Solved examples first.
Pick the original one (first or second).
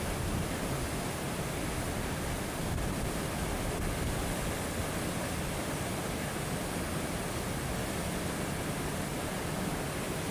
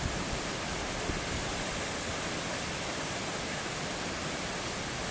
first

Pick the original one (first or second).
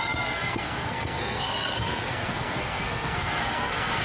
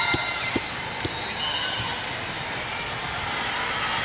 second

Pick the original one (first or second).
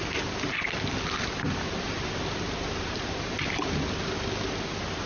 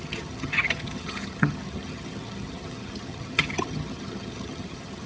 first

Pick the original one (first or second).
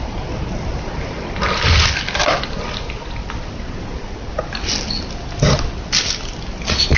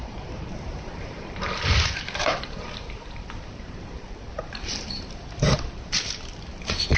first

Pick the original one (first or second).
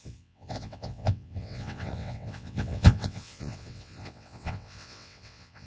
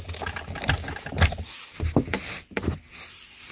second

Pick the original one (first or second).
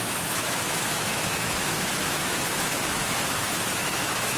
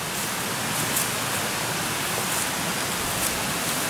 second